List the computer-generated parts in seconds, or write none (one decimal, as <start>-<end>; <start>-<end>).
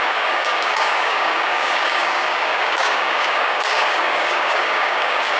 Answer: 0.0-5.4